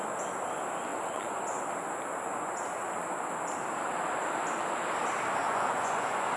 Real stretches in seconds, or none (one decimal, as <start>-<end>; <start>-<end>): 0.0-0.9; 1.6-2.2; 3.3-5.4